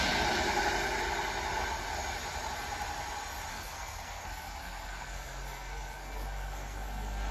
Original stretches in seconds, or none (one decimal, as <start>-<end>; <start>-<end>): 0.0-3.5